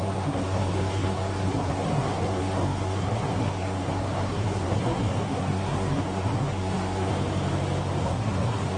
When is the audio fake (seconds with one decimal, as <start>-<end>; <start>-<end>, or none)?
0.0-7.1; 8.0-8.8